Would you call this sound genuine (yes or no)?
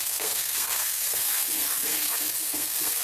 no